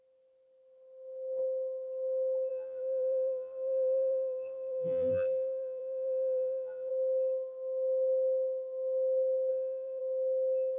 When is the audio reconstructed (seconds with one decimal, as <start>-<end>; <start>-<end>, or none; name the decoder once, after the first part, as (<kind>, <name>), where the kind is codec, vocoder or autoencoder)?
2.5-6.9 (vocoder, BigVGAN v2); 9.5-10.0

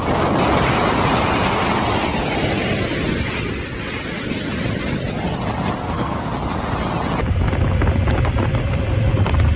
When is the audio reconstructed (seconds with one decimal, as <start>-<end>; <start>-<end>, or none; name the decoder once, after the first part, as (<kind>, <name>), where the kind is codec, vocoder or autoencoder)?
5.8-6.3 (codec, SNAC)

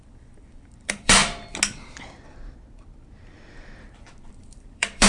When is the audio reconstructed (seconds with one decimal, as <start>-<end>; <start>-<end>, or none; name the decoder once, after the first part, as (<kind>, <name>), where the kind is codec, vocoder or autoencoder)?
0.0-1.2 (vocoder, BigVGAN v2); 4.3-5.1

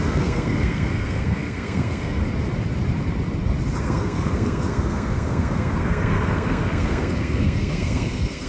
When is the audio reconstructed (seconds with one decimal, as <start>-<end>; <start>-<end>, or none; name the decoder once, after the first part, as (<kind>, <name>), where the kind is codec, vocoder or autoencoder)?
0.0-2.2 (codec, SNAC); 3.8-8.5

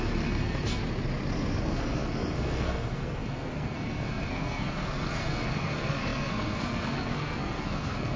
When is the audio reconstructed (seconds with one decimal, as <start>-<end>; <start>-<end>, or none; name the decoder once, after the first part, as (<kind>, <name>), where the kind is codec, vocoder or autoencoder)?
0.0-0.8 (codec, SNAC); 1.6-8.2

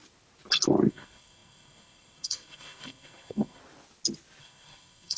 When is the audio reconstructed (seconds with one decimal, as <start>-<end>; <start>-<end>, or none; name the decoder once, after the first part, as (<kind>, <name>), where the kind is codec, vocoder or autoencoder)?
0.9-3.6 (codec, SNAC); 4.4-5.2

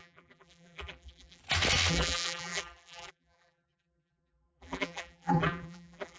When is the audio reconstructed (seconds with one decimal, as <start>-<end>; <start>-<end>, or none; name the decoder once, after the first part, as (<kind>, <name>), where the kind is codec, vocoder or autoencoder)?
0.0-1.4 (vocoder, BigVGAN v2); 1.9-6.2

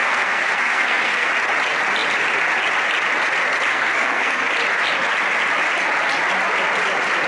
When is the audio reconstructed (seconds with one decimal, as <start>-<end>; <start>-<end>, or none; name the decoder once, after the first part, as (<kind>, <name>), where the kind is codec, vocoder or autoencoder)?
0.0-1.3 (codec, SNAC); 3.7-4.5